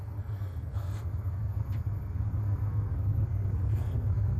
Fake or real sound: fake